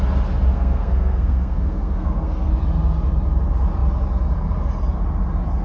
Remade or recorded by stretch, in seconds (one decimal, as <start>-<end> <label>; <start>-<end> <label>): 0.0-0.5 recorded; 0.5-2.5 remade; 2.5-5.6 recorded